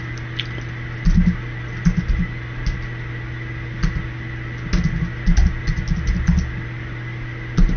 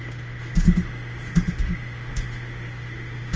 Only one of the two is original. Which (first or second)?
first